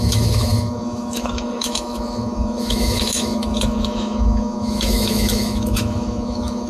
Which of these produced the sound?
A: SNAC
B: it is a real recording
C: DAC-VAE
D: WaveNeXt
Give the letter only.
C